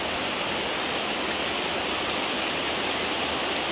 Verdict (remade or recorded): recorded